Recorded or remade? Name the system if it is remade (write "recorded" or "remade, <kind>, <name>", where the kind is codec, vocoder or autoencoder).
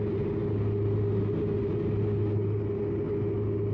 recorded